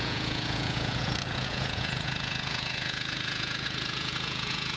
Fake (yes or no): yes